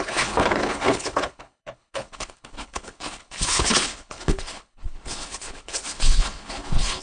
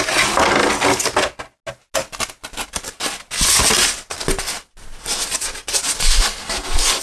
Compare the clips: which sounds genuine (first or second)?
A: second